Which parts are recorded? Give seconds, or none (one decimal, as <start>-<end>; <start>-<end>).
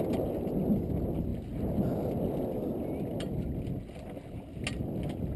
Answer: 0.0-5.4